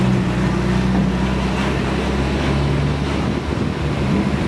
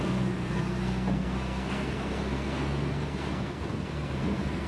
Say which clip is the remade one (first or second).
second